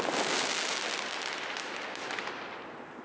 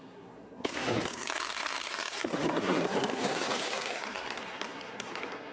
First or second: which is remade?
second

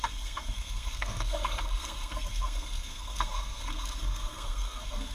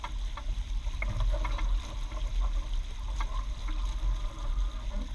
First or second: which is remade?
first